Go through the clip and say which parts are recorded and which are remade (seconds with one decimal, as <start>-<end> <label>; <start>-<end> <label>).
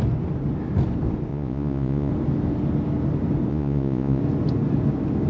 0.0-1.3 recorded; 1.3-2.1 remade; 2.1-3.5 recorded; 3.5-4.2 remade; 4.2-5.3 recorded